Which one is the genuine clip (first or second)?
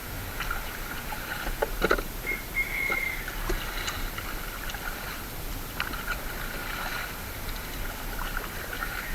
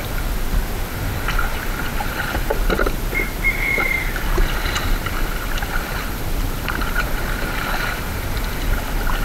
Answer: first